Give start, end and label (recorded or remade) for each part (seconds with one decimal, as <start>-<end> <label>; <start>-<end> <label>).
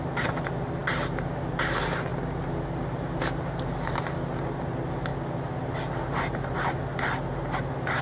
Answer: 0.0-2.1 recorded; 2.1-3.2 remade; 3.2-8.0 recorded